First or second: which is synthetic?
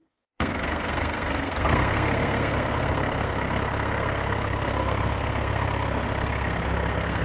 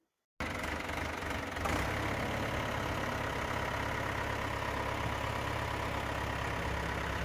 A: first